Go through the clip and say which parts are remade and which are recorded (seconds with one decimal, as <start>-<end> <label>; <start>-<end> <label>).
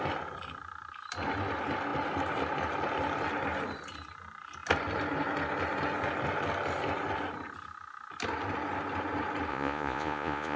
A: 0.0-9.5 recorded; 9.5-10.6 remade